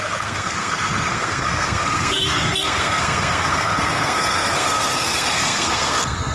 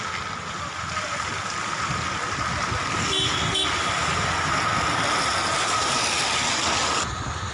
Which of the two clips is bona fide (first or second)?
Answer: second